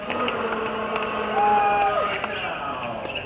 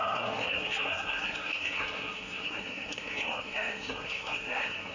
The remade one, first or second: second